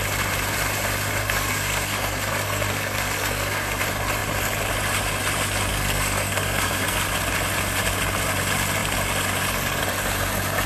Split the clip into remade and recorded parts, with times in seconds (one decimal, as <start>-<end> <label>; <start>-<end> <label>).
0.0-1.2 recorded; 1.2-3.8 remade; 3.8-5.7 recorded; 5.7-7.1 remade; 7.1-10.7 recorded